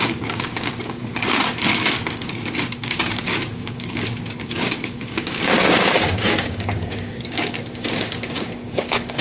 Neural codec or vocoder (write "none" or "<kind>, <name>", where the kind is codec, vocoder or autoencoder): codec, DAC